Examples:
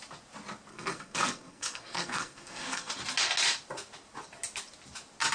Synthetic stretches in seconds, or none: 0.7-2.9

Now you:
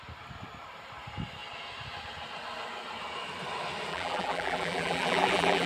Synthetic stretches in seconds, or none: 3.9-5.7

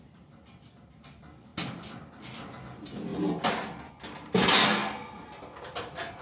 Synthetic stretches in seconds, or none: none

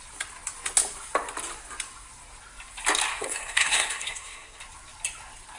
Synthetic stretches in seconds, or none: 3.1-4.6